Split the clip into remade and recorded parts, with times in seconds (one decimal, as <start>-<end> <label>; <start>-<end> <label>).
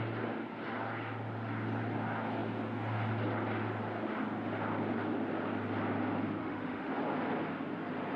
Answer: 0.0-6.4 recorded; 6.4-6.9 remade; 6.9-8.2 recorded